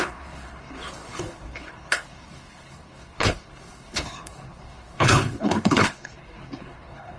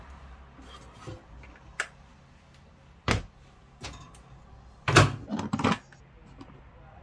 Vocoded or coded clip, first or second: first